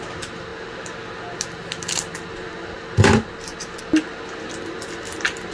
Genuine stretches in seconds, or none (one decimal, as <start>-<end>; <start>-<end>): 0.0-5.5